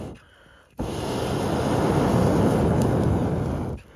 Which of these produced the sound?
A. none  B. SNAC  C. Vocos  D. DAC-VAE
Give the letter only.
A